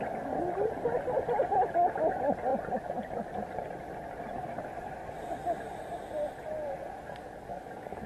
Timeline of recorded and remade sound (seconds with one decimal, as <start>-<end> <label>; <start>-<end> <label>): 0.0-7.1 recorded; 7.1-8.1 remade